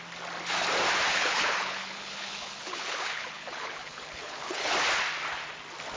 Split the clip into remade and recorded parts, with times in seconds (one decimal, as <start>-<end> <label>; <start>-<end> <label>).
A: 0.0-1.1 recorded; 1.1-4.7 remade; 4.7-6.0 recorded